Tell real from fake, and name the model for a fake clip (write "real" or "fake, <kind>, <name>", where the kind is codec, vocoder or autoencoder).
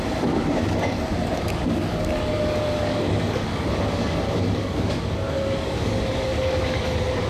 fake, codec, DAC